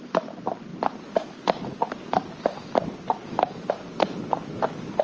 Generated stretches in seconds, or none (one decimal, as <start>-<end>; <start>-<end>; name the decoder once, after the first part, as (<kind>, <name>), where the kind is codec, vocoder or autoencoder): none